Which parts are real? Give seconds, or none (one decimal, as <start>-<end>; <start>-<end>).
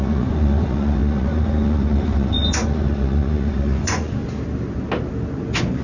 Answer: 4.2-5.3